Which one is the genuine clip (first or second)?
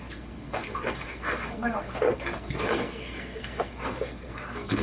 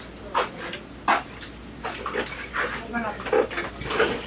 second